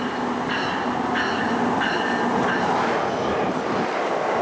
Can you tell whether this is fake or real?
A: real